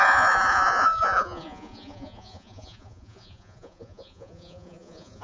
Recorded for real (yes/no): no